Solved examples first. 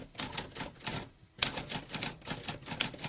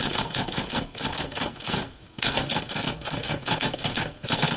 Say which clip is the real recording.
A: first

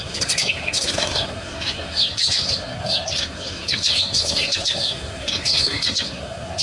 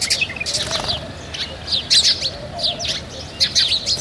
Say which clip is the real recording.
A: second